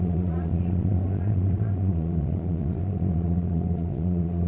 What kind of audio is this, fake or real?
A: fake